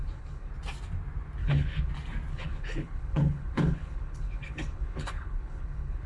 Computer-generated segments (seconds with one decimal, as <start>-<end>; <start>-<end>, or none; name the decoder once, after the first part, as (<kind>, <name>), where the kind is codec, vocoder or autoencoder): 0.0-0.5 (codec, HILCodec); 1.4-1.9; 2.3-6.1